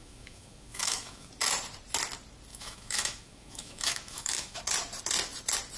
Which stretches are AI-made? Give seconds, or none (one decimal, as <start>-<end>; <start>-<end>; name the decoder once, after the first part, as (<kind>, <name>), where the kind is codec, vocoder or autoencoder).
0.0-1.3 (autoencoder, DAC-VAE); 2.5-4.6